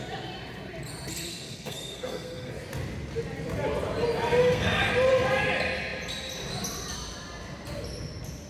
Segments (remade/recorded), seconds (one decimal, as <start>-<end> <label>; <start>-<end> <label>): 0.0-1.3 recorded; 1.3-2.5 remade; 2.5-4.4 recorded; 4.4-4.9 remade; 4.9-8.5 recorded